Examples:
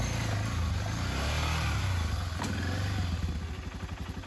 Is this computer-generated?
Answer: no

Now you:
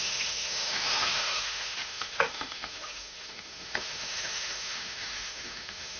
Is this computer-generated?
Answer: yes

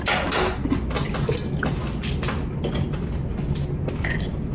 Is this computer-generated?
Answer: no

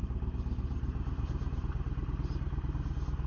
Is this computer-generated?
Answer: no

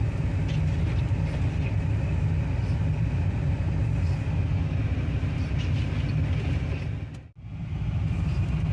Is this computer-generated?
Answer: no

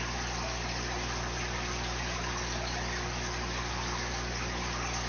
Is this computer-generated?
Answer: no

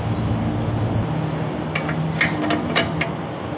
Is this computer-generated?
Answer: no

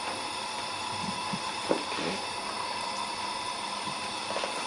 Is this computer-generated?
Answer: no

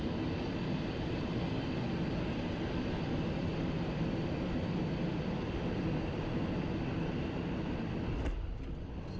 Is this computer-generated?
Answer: no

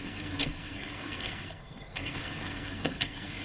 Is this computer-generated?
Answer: yes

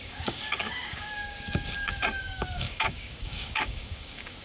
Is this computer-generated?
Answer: yes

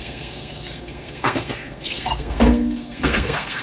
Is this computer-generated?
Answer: yes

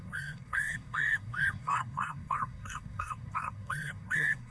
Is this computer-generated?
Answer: yes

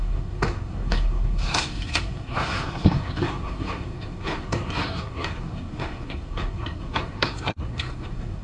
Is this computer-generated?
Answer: yes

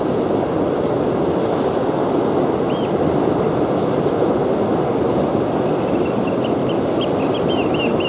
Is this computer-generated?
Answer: no